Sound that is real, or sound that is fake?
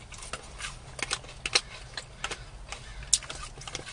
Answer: real